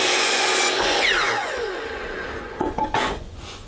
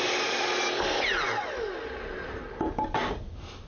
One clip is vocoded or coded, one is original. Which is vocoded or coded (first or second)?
first